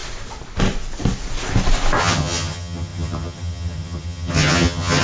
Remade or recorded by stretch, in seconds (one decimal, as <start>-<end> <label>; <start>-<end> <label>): 0.0-2.0 recorded; 2.0-5.0 remade